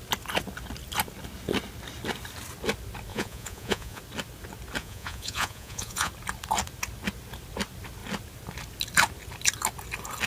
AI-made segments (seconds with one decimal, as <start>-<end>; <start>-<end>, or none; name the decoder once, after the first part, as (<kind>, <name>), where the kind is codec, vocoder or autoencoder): 3.1-4.0 (vocoder, Vocos); 4.8-6.1